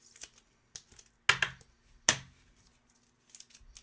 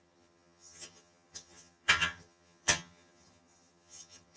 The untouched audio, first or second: first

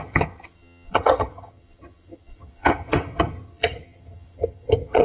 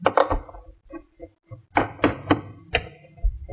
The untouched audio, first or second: second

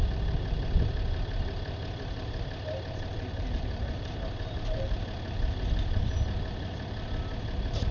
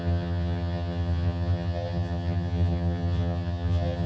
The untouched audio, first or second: first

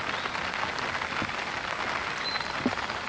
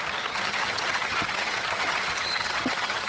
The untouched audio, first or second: first